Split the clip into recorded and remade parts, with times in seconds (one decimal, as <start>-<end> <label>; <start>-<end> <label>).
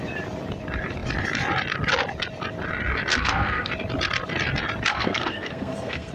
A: 0.0-3.1 recorded; 3.1-3.7 remade; 3.7-4.9 recorded; 4.9-6.1 remade